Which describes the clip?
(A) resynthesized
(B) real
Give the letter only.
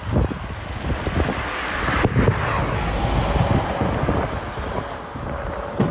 B